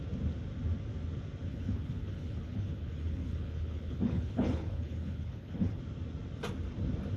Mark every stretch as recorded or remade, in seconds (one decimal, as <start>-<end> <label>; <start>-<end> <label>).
0.0-1.5 recorded; 1.5-5.8 remade; 5.8-7.2 recorded